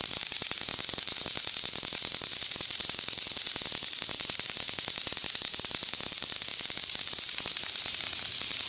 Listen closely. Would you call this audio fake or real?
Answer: fake